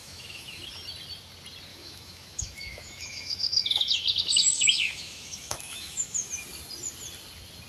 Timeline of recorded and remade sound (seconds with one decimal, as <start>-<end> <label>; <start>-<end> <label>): 0.0-0.6 remade; 0.6-1.7 recorded; 1.7-6.3 remade; 6.3-7.7 recorded